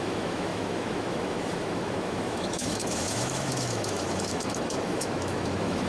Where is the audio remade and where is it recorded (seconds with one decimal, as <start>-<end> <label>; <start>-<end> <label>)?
0.0-5.9 remade